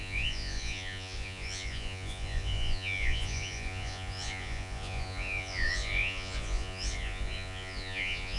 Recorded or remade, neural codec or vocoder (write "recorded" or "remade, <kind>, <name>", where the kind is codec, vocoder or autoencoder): remade, vocoder, Vocos